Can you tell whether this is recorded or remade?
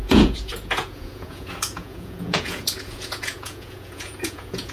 remade